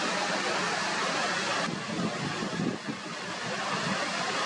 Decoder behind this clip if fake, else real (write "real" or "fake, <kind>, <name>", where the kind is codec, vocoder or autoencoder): real